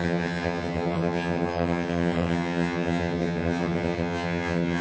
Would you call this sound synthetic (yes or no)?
yes